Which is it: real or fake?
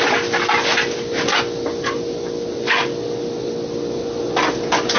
real